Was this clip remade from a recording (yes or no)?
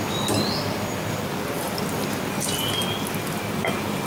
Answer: no